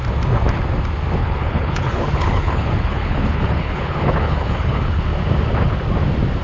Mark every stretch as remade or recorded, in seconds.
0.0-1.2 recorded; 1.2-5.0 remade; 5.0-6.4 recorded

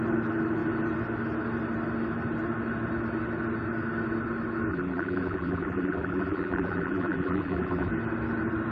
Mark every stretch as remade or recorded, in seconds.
0.0-4.7 recorded; 4.7-7.9 remade; 7.9-8.7 recorded

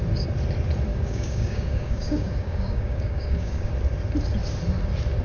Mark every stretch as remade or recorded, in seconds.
0.0-0.9 recorded; 0.9-3.7 remade; 3.7-5.2 recorded